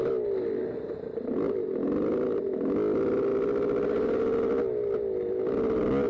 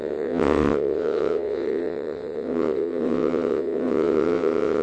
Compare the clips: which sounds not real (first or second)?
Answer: second